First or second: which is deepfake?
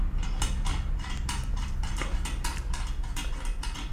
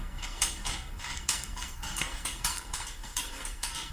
second